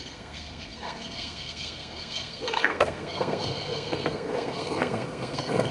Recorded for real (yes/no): no